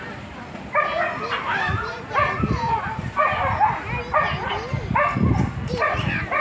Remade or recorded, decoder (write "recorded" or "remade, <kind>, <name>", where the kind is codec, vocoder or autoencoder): recorded